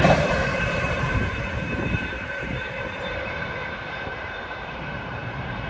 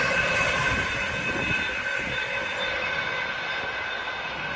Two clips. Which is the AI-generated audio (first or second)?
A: first